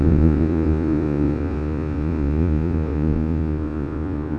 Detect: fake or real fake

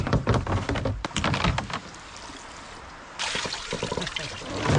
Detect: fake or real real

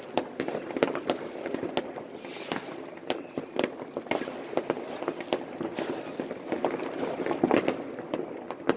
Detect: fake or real real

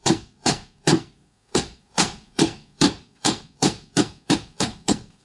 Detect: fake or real fake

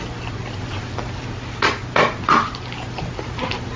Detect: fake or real real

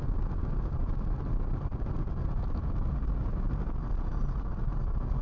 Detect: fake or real real